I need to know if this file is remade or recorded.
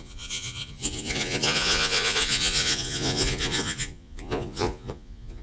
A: remade